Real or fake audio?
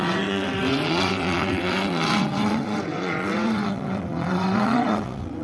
fake